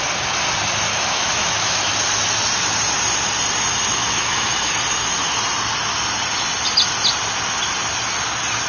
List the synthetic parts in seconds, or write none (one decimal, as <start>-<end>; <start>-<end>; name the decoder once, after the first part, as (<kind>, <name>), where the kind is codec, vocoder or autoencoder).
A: 0.9-1.9 (autoencoder, DAC-VAE); 4.0-4.7